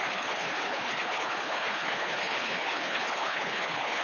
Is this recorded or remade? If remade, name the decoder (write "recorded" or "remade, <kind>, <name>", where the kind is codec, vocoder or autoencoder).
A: remade, codec, HILCodec